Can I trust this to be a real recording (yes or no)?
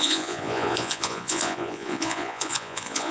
no